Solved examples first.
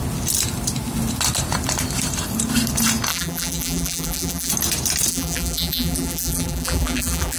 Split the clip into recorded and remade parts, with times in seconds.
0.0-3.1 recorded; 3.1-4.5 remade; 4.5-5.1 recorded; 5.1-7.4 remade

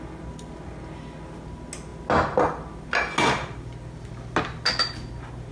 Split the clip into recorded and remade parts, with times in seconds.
0.0-5.5 recorded

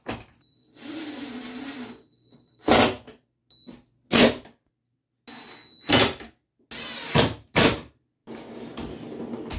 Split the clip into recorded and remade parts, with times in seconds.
0.0-3.4 remade; 3.4-7.2 recorded; 7.2-8.2 remade; 8.2-9.2 recorded; 9.2-9.6 remade

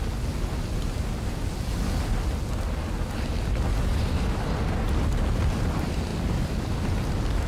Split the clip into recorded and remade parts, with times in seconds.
0.0-7.5 recorded

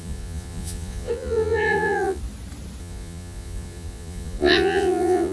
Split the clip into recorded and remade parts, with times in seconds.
0.0-2.2 remade; 2.2-2.8 recorded; 2.8-5.3 remade

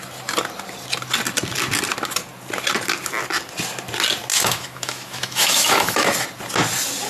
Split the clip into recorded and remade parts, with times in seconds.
0.0-4.3 recorded; 4.3-6.1 remade; 6.1-7.1 recorded

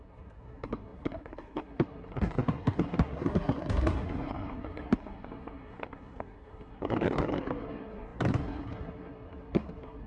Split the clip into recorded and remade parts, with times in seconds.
0.0-10.1 remade

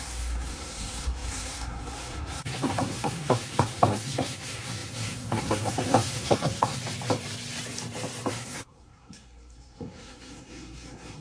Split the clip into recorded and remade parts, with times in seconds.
0.0-6.8 remade; 6.8-8.3 recorded; 8.3-11.2 remade